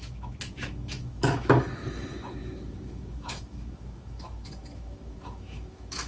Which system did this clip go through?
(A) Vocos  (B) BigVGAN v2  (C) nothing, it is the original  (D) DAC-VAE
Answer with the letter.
D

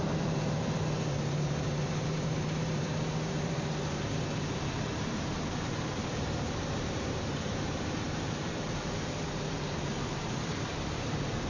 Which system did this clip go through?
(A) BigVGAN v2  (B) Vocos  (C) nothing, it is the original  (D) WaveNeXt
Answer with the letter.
A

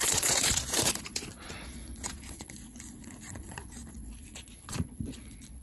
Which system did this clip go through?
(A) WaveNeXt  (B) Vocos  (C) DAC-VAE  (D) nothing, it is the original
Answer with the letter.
B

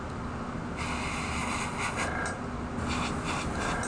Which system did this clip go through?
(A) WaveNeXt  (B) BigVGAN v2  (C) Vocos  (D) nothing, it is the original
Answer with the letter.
D